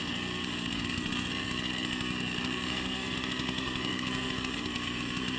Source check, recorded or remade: remade